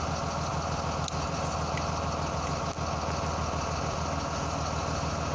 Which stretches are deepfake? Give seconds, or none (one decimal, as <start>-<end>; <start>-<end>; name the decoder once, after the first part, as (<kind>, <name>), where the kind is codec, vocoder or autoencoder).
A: none